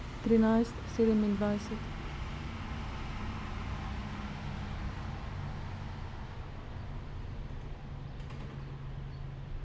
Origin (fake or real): real